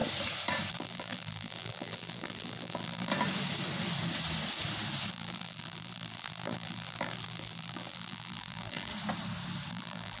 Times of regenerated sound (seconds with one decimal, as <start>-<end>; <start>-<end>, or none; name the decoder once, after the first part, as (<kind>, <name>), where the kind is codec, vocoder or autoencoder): 0.7-3.1 (vocoder, BigVGAN v2); 5.1-8.9; 9.7-10.2

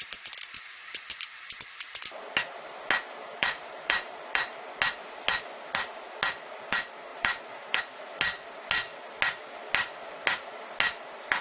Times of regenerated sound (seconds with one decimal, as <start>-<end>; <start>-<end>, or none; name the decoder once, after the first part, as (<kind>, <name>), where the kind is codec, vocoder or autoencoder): 3.3-4.1 (vocoder, BigVGAN v2); 7.1-7.8

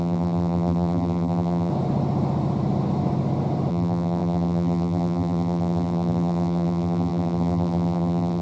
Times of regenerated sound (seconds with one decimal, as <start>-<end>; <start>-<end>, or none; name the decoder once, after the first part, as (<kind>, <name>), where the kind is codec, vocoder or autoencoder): 0.0-1.7 (vocoder, BigVGAN v2); 3.7-8.4

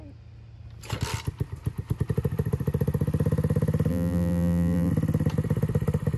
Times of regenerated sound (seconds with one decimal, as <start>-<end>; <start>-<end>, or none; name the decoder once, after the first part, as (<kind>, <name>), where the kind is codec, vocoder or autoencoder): 3.9-4.9 (vocoder, BigVGAN v2)

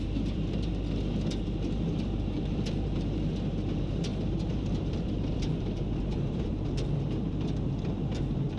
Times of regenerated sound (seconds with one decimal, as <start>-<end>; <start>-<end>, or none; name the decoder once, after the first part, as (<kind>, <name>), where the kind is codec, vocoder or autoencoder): 0.0-0.7 (vocoder, BigVGAN v2); 1.4-8.6

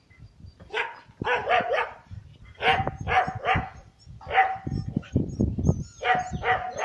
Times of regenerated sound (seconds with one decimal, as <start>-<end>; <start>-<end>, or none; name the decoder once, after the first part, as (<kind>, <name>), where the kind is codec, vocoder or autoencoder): 1.4-2.2 (vocoder, BigVGAN v2)

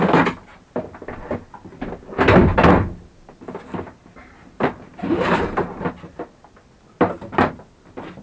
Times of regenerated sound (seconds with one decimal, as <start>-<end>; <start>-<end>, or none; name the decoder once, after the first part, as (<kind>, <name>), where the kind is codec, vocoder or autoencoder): 4.9-5.6 (vocoder, BigVGAN v2)